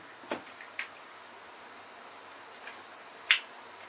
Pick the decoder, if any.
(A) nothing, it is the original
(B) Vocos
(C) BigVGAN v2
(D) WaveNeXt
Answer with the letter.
A